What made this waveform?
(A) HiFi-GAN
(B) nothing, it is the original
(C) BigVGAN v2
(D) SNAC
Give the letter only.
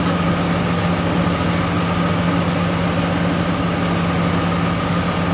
B